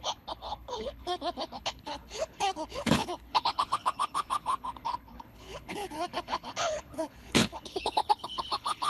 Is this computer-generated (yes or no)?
yes